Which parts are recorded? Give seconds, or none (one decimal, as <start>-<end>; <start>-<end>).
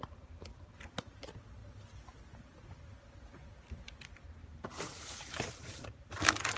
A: 0.0-0.5; 1.2-4.4; 6.1-6.6